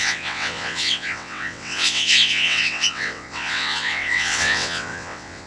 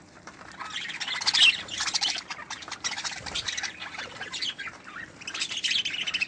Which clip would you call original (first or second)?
second